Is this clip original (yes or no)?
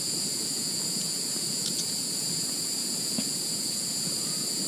no